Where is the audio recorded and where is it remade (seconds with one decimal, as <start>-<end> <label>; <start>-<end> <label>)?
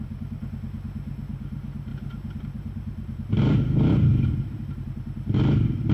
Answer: 0.0-0.4 remade; 0.4-1.3 recorded; 1.3-1.9 remade; 1.9-2.4 recorded; 2.4-4.1 remade; 4.1-4.7 recorded; 4.7-5.9 remade